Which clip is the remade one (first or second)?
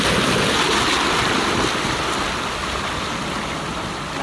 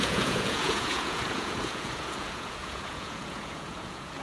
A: second